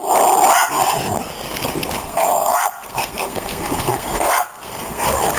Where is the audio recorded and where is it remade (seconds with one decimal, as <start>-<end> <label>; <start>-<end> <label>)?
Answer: 0.0-2.0 recorded; 2.0-5.4 remade